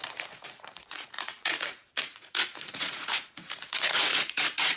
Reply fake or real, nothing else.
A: fake